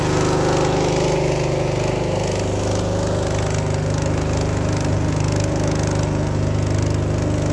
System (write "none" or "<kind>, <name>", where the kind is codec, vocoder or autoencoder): none